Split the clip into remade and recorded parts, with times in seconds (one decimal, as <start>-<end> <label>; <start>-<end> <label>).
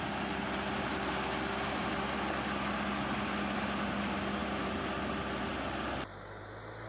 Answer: 0.0-6.9 recorded